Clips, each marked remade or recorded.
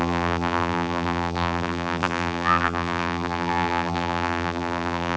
remade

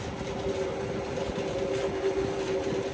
recorded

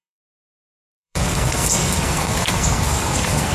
remade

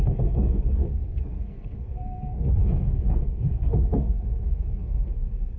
remade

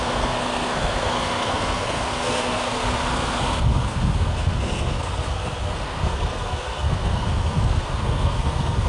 remade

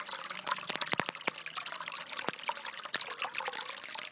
recorded